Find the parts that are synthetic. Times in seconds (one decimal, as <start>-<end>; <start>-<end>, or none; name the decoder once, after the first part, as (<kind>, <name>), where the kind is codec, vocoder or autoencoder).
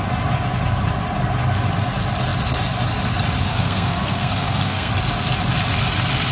3.4-4.9 (codec, SNAC)